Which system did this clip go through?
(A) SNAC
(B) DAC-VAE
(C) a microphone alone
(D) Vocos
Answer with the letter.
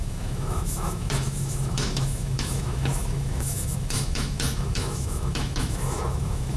B